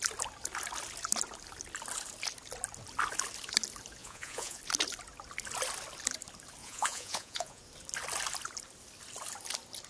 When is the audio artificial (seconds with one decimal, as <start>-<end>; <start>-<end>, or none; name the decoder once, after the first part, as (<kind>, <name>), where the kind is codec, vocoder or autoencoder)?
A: 4.0-4.6 (vocoder, Vocos); 6.6-7.6